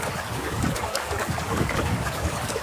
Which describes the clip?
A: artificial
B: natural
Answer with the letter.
A